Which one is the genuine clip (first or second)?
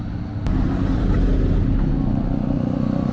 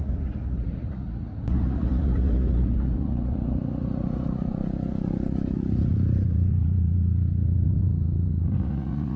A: first